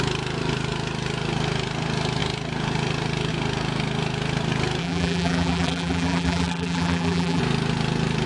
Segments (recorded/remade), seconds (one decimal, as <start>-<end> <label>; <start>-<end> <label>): 0.0-4.8 recorded; 4.8-7.4 remade; 7.4-8.3 recorded